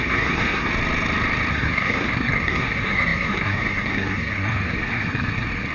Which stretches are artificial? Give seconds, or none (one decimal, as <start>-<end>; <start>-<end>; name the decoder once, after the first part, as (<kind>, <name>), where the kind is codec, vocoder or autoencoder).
0.0-0.7 (codec, SNAC); 1.5-5.7